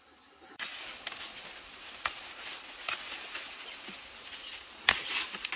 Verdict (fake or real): real